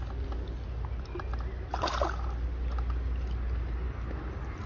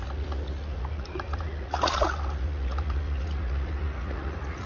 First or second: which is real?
first